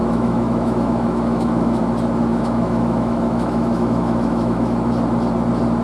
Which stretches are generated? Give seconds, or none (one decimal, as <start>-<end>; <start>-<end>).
0.0-1.8; 2.3-4.9